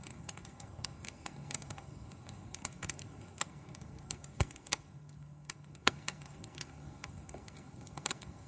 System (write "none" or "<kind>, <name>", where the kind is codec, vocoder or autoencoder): codec, SNAC